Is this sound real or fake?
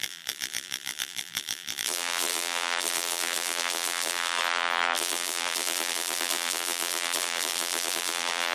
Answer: fake